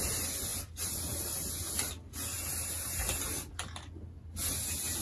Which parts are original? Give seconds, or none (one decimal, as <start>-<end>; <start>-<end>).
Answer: 0.0-5.0